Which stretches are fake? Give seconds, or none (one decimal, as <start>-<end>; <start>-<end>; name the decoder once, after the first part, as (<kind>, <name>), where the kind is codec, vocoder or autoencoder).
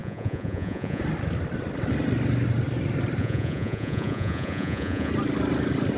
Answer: 0.0-1.0 (vocoder, Vocos); 3.2-5.1